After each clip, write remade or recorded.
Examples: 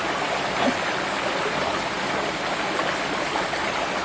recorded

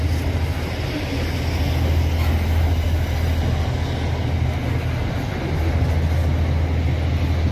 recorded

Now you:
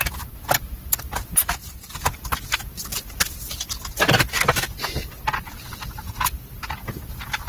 recorded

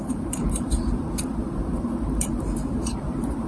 remade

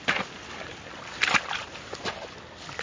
recorded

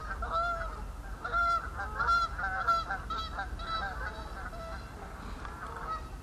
recorded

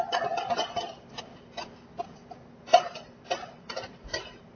recorded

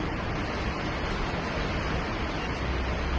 recorded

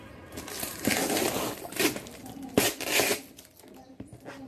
recorded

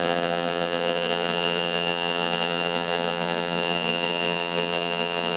remade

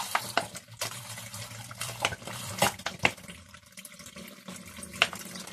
remade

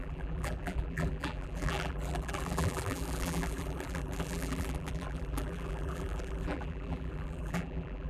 remade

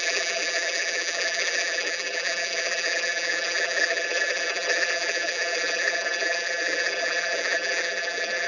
remade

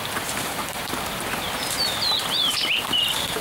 remade